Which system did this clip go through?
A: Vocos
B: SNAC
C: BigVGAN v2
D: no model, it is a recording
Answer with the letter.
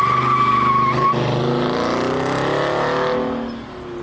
D